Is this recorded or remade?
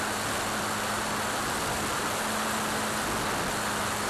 recorded